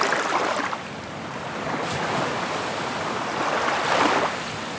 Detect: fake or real real